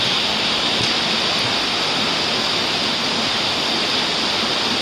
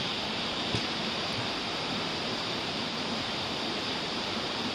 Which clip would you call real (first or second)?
first